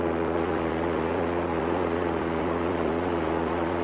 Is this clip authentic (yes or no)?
no